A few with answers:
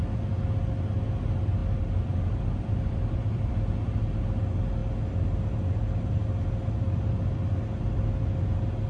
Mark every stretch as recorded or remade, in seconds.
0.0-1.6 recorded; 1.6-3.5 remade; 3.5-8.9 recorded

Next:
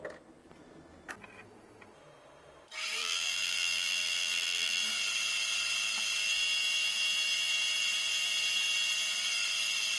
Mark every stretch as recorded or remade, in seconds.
0.0-3.0 recorded; 3.0-4.8 remade; 4.8-10.0 recorded

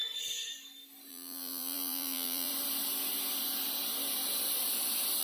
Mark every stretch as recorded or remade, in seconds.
0.0-1.1 recorded; 1.1-2.5 remade; 2.5-5.2 recorded

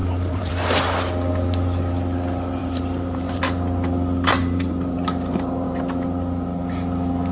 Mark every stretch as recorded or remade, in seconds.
0.0-0.5 remade; 0.5-2.6 recorded; 2.6-3.4 remade; 3.4-4.3 recorded; 4.3-5.8 remade; 5.8-7.3 recorded

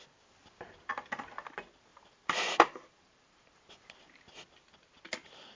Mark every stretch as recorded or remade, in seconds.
0.0-0.4 recorded; 0.4-0.9 remade; 0.9-1.9 recorded; 1.9-3.6 remade; 3.6-5.6 recorded

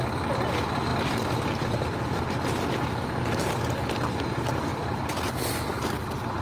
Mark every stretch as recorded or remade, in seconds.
0.0-0.9 recorded; 0.9-2.4 remade; 2.4-4.7 recorded; 4.7-5.3 remade; 5.3-6.4 recorded

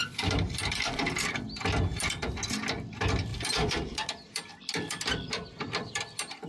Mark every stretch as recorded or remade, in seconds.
0.0-1.3 remade; 1.3-3.3 recorded; 3.3-4.6 remade; 4.6-6.5 recorded

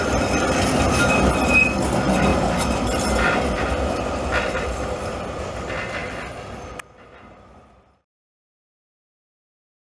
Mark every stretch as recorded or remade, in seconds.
0.0-2.3 remade; 2.3-4.3 recorded; 4.3-9.8 remade